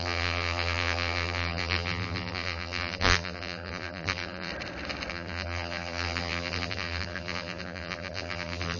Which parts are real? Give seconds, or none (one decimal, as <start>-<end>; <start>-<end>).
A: 4.5-5.1